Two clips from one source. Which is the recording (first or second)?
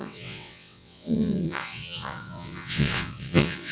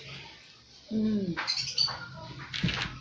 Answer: second